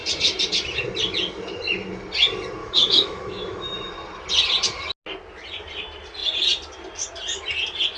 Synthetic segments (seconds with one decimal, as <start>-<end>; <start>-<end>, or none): 2.6-3.9